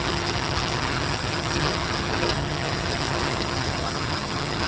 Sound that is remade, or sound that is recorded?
remade